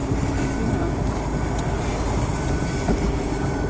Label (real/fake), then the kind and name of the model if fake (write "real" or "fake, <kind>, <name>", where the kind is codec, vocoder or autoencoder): fake, vocoder, BigVGAN v2